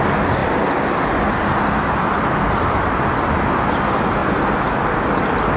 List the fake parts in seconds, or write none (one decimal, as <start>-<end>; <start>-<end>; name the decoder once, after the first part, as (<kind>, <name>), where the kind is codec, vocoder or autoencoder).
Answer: none